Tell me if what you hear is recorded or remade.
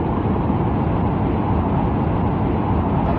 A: recorded